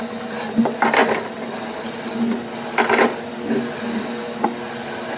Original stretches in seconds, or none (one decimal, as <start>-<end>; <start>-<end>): 0.0-5.2